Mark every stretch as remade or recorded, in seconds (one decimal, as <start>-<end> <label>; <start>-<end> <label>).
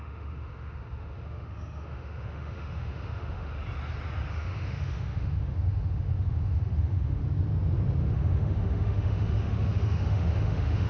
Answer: 0.0-3.5 remade; 3.5-4.3 recorded; 4.3-7.2 remade; 7.2-8.0 recorded; 8.0-10.9 remade